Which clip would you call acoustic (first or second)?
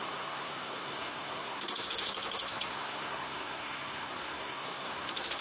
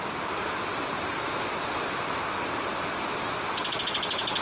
second